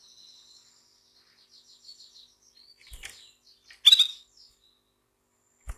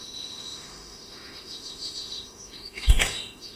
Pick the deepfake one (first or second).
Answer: second